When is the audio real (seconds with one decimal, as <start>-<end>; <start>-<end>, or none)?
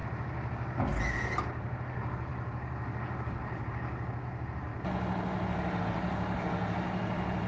0.0-7.5